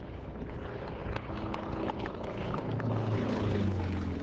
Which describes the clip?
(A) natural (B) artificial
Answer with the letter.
B